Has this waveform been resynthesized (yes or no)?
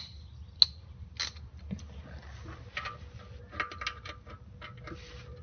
no